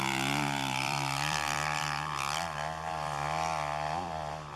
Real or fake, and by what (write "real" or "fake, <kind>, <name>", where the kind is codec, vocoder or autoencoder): fake, vocoder, BigVGAN v2